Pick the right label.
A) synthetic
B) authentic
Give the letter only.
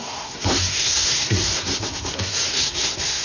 A